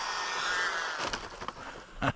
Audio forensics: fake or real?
real